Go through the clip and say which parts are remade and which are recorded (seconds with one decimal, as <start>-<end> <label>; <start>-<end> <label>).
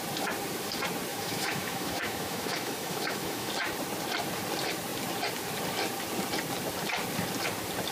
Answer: 0.0-1.1 recorded; 1.1-3.5 remade; 3.5-7.9 recorded